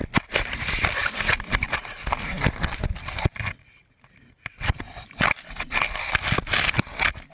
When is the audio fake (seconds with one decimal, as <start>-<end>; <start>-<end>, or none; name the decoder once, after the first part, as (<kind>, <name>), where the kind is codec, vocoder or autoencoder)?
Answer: none